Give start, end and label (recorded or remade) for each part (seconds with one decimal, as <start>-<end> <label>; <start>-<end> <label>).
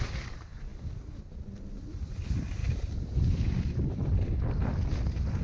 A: 0.0-2.6 recorded; 2.6-4.5 remade; 4.5-5.4 recorded